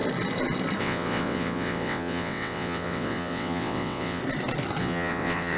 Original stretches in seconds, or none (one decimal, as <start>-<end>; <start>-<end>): 0.0-0.8; 4.2-4.8